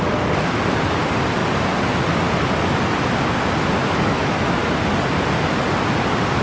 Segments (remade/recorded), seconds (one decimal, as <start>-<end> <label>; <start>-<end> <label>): 0.0-3.8 recorded; 3.8-4.6 remade; 4.6-6.4 recorded